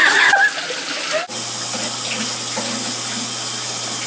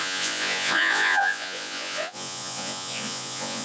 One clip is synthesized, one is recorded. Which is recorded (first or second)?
first